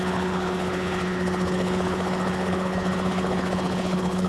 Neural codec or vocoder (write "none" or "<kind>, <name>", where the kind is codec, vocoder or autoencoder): codec, HILCodec